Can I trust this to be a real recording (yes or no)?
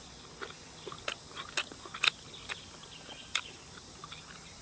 yes